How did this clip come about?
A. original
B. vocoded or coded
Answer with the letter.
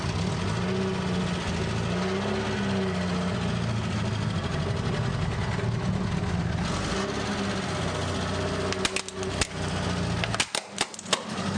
A